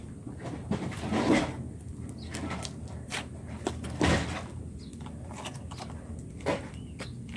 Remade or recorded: recorded